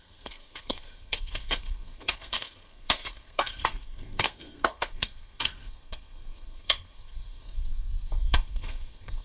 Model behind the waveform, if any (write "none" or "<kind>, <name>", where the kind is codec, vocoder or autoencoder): codec, SNAC